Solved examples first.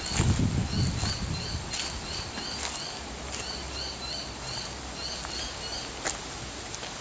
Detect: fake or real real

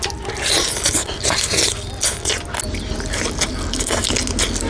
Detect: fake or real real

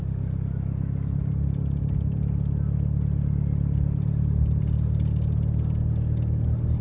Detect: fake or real real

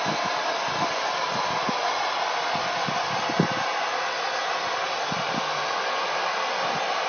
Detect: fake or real real